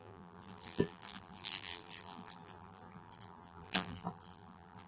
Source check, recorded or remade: remade